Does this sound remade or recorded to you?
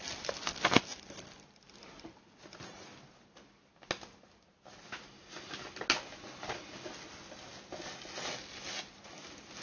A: recorded